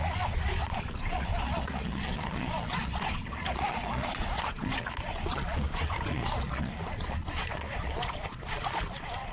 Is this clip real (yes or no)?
no